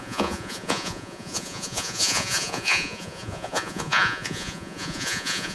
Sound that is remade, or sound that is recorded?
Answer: remade